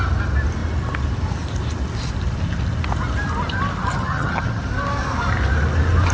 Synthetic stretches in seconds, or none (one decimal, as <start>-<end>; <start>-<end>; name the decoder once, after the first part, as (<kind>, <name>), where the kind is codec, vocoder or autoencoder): 3.9-4.6 (vocoder, HiFi-GAN)